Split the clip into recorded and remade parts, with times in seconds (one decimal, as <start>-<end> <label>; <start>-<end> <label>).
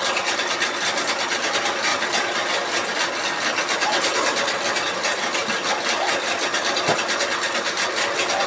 0.0-8.5 recorded